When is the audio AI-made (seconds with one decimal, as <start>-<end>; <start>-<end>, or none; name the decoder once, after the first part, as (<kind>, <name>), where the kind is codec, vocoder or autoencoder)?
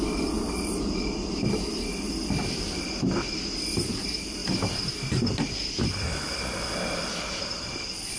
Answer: none